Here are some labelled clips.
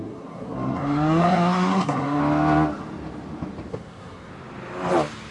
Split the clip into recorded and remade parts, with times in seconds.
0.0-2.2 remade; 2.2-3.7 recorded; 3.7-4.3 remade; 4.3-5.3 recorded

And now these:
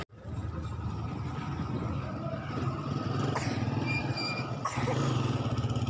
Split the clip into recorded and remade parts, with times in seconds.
0.0-5.9 recorded

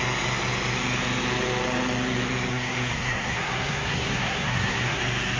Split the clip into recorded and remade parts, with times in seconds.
0.0-2.5 recorded; 2.5-5.0 remade; 5.0-5.4 recorded